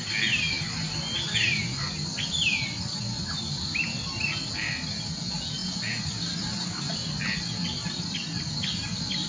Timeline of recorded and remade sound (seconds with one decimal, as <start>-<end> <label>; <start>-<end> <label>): 0.0-9.3 recorded